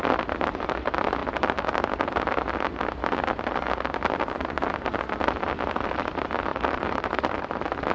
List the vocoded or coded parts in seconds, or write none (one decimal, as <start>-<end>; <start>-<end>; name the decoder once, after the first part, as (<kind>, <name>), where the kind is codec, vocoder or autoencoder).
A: 6.5-7.1 (vocoder, BigVGAN v2)

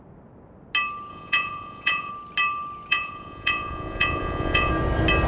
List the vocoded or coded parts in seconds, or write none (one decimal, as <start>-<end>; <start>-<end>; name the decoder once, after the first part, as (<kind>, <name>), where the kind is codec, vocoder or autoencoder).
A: 1.1-2.1 (vocoder, Vocos); 2.9-4.7

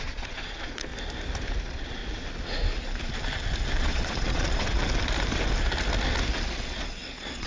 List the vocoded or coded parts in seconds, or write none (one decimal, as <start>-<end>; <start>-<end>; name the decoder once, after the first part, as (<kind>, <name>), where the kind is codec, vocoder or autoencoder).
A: 0.0-0.9 (vocoder, Vocos); 1.6-2.0; 3.8-4.8; 6.5-7.5

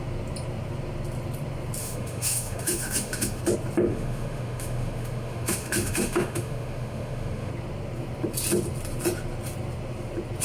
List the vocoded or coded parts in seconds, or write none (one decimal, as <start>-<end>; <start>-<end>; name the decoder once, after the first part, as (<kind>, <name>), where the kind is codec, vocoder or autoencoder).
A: 1.8-3.4 (autoencoder, DAC-VAE); 3.9-7.5

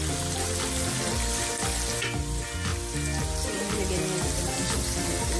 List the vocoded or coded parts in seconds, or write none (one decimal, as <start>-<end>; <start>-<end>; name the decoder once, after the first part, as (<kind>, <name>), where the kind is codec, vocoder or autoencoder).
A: none